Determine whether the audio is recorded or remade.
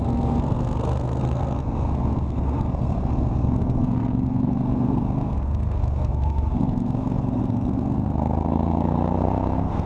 remade